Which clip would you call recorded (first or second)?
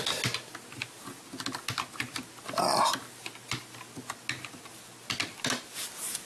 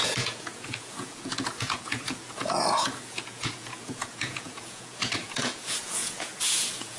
first